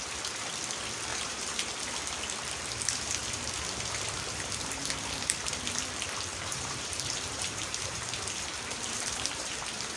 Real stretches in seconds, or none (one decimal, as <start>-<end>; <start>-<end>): 0.0-1.1; 1.7-6.3; 9.6-10.0